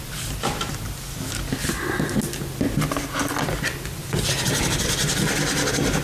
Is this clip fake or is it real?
real